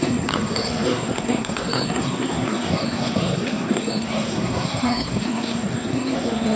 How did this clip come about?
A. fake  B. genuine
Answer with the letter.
A